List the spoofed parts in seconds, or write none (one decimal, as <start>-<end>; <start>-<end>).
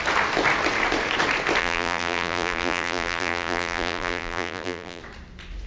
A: 1.6-5.0